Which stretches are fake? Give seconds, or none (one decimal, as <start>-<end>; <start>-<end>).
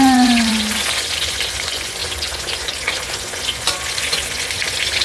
0.0-5.0